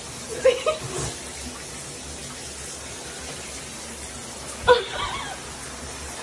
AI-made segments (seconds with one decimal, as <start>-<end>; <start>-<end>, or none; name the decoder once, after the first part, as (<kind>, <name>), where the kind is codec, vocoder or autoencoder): none